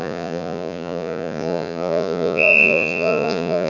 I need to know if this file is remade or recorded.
remade